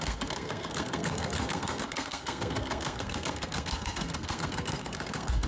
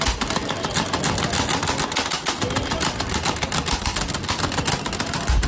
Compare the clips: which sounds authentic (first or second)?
second